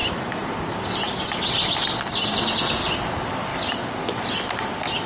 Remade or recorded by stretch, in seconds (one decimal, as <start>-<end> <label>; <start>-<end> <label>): 0.0-5.1 recorded